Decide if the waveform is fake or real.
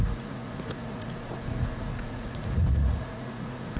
fake